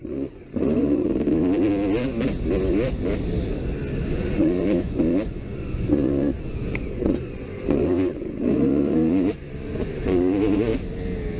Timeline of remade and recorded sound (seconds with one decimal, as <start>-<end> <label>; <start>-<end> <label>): 0.0-1.1 remade; 1.1-4.1 recorded; 4.1-10.7 remade; 10.7-11.4 recorded